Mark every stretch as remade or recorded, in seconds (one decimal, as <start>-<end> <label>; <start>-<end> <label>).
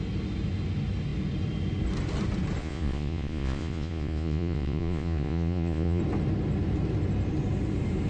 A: 0.0-2.6 recorded; 2.6-6.0 remade; 6.0-8.1 recorded